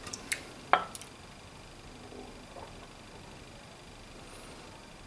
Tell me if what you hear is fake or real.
real